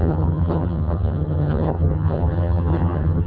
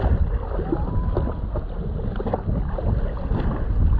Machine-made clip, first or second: first